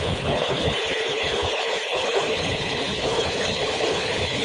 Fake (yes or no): yes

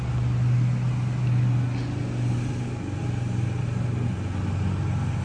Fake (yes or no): no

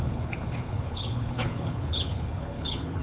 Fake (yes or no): yes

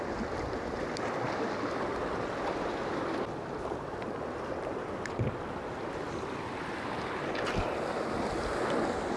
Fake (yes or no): no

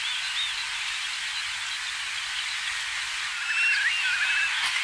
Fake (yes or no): no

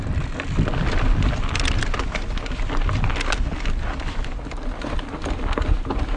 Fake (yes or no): no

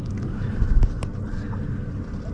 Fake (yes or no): no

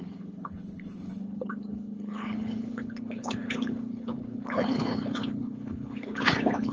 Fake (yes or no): yes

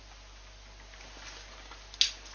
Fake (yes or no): no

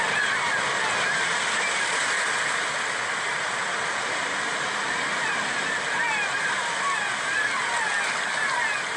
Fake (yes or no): no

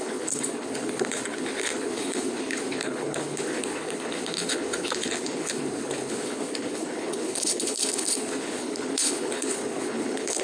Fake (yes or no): yes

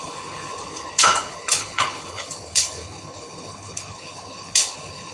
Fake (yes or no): yes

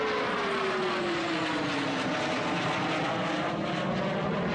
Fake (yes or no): no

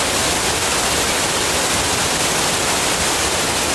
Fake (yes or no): no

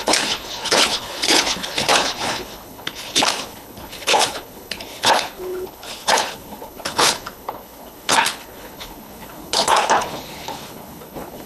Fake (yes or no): yes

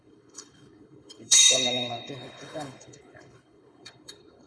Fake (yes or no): yes